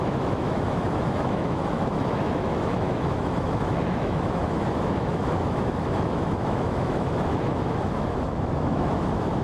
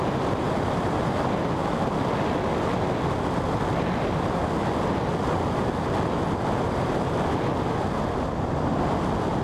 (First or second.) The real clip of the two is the second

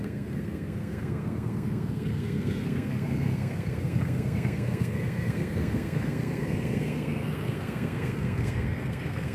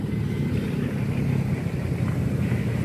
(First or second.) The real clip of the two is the second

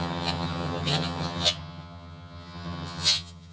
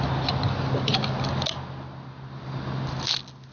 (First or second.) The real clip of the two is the second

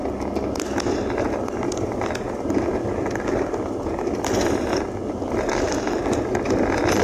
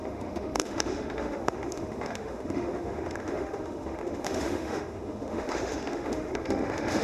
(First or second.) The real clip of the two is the first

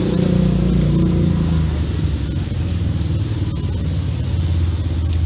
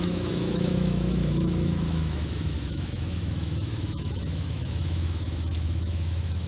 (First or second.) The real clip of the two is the first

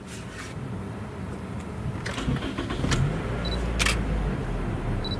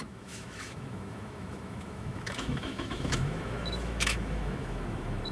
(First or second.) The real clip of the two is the first